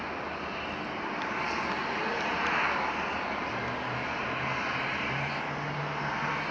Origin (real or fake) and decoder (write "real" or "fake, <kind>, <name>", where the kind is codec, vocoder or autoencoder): real